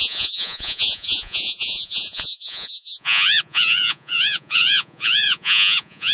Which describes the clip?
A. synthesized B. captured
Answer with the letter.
A